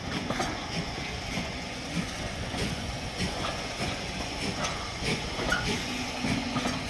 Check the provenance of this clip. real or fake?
fake